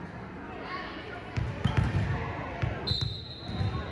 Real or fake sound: real